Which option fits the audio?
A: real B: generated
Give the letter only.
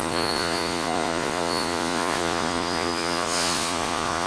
B